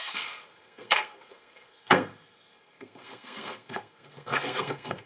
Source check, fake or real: fake